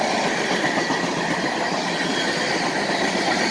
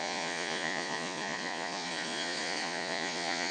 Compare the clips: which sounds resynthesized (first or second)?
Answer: second